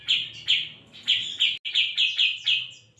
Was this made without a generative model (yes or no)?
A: yes